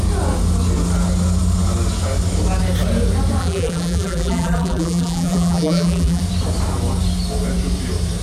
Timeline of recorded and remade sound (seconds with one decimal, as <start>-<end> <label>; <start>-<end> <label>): 0.0-3.4 recorded; 3.4-6.2 remade; 6.2-8.2 recorded